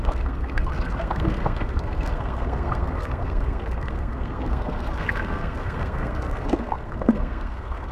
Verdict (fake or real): fake